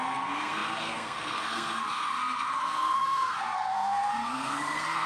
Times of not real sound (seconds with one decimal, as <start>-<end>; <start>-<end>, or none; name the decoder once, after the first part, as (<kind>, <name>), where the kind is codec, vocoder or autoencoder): 0.0-5.1 (codec, SNAC)